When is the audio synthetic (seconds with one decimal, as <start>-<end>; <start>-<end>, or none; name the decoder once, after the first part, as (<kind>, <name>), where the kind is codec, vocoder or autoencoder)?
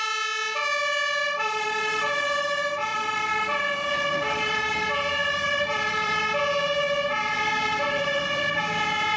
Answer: 1.2-1.8 (vocoder, BigVGAN v2); 2.9-3.6; 5.2-6.1; 7.2-8.6